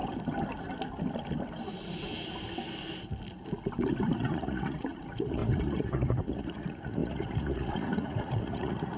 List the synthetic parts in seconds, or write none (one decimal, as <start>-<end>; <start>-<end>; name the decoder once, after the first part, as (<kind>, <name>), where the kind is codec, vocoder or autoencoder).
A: 4.0-9.0 (vocoder, Vocos)